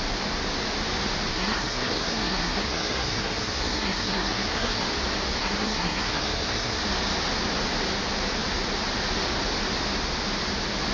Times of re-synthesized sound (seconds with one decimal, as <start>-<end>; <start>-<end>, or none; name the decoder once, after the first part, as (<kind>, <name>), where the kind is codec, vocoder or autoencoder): 1.3-4.8 (codec, SNAC); 5.4-6.8